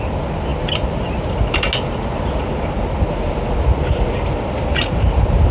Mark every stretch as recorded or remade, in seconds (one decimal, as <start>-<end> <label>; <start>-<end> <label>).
0.0-5.5 recorded